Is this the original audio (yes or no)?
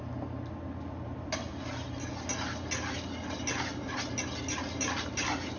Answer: yes